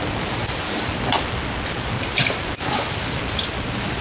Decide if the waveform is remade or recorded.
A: recorded